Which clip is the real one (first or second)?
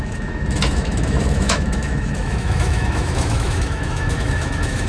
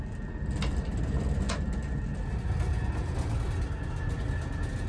second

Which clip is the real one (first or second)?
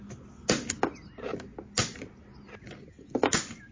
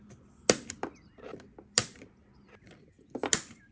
first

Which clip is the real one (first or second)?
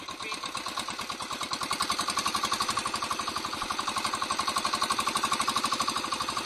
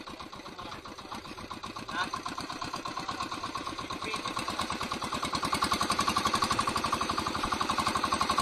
first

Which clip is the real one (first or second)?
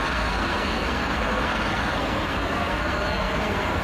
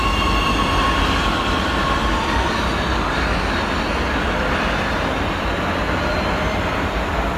second